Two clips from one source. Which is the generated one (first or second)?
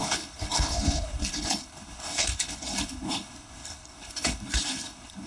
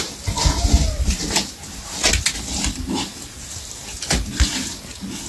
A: first